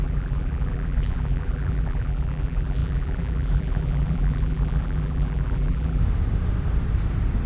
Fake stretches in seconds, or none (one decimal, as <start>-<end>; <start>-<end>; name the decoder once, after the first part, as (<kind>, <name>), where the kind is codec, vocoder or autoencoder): 0.0-6.0 (vocoder, BigVGAN v2)